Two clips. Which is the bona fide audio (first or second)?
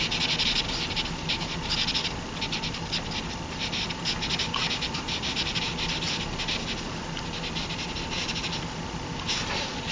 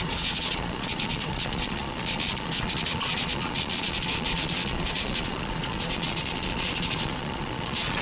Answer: first